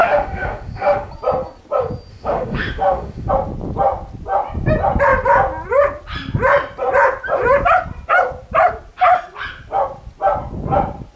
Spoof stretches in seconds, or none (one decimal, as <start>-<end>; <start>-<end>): 0.0-1.1; 2.1-3.3